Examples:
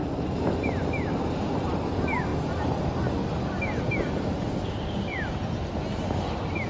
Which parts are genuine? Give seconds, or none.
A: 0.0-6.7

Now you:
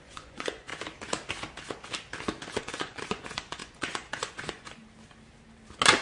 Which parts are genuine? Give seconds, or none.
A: 0.7-2.6; 4.8-6.0

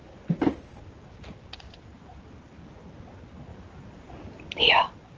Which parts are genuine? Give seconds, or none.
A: 0.0-5.2